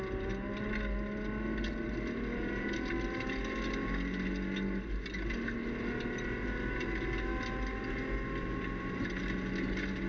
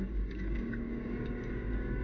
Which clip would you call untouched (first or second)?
first